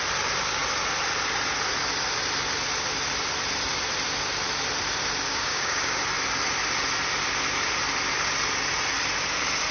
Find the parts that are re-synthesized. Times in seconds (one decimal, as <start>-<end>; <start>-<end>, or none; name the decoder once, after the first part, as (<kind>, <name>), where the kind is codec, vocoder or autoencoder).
5.3-6.0 (codec, DAC)